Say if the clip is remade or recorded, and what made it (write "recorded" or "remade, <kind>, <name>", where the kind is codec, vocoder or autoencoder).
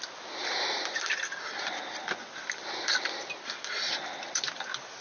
recorded